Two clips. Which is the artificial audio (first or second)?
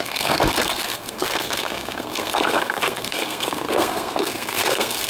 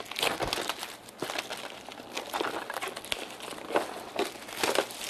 first